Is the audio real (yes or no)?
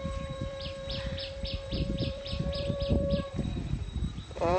no